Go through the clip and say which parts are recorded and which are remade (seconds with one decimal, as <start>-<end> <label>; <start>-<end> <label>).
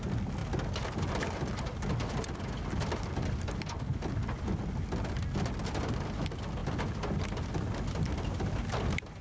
0.0-9.2 recorded